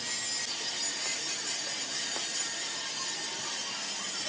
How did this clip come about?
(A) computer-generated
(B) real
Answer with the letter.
B